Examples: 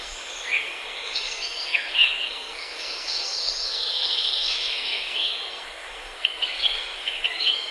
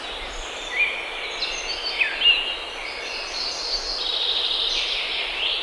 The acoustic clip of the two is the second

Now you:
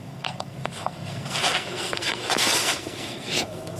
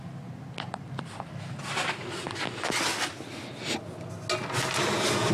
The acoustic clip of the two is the second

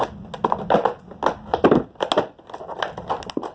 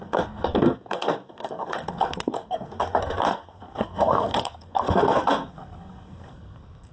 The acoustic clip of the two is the first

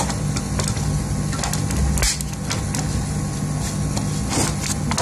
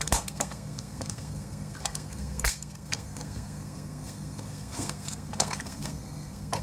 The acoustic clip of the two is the first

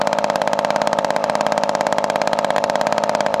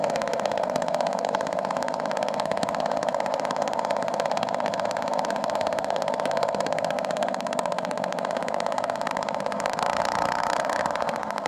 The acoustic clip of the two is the first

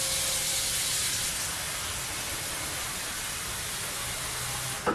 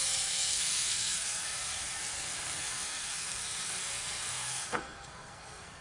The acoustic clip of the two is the first